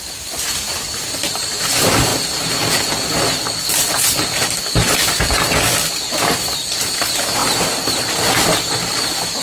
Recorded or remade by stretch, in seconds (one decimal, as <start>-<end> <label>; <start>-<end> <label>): 0.0-2.1 remade; 2.1-3.8 recorded; 3.8-9.4 remade